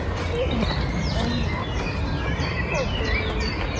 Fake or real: real